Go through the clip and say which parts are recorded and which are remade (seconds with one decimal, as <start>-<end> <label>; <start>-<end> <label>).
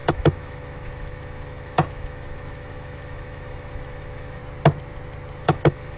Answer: 0.0-4.4 remade; 4.4-5.4 recorded; 5.4-6.0 remade